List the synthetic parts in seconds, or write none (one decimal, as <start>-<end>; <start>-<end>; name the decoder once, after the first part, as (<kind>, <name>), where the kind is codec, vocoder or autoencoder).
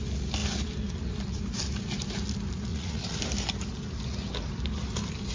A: 2.7-3.2 (vocoder, Vocos)